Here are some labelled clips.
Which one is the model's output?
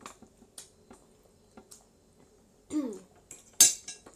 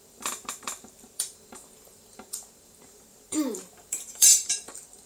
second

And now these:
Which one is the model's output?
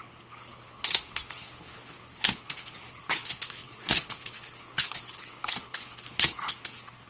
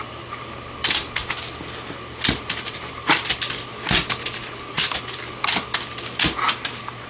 first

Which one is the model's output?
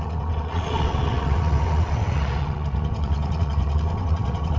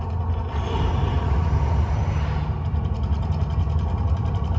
first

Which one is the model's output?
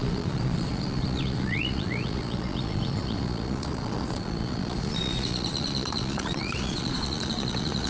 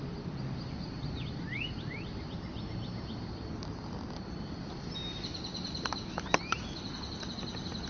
first